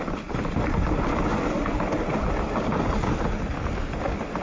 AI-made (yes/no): no